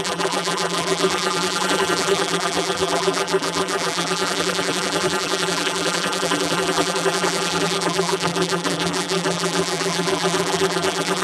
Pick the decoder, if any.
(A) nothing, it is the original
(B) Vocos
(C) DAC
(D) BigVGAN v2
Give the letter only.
D